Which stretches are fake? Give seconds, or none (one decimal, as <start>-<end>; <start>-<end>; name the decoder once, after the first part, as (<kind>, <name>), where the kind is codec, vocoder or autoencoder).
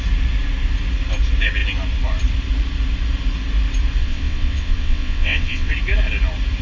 4.0-5.7 (vocoder, WaveNeXt)